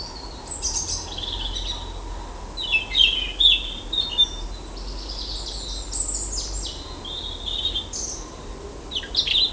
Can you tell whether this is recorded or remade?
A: recorded